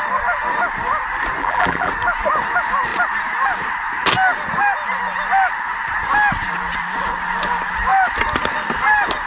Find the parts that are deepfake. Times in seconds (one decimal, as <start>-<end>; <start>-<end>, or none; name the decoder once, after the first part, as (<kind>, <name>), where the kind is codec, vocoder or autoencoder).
1.4-1.9 (vocoder, BigVGAN v2)